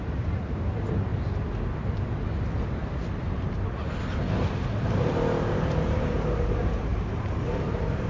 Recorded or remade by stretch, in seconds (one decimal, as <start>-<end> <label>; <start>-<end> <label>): 0.0-1.1 remade; 1.1-4.6 recorded; 4.6-8.1 remade